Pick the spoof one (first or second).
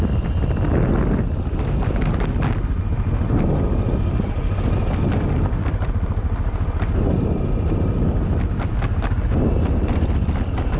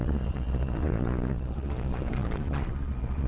second